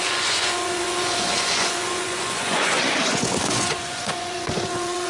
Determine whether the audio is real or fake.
fake